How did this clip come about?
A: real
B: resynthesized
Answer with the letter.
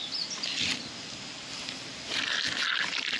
A